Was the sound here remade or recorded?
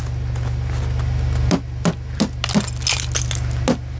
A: recorded